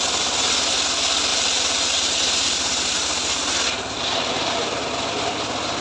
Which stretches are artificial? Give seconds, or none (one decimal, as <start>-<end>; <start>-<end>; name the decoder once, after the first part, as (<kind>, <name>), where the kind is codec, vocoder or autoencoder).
1.3-4.8 (vocoder, BigVGAN v2)